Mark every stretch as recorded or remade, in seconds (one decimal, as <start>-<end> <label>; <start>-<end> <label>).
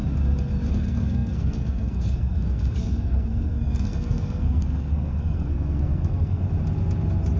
0.0-0.7 recorded; 0.7-6.4 remade; 6.4-7.4 recorded